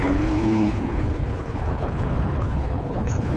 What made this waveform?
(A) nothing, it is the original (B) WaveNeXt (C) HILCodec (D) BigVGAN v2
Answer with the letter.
C